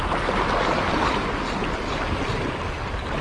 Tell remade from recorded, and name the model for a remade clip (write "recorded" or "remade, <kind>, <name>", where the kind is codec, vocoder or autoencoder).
recorded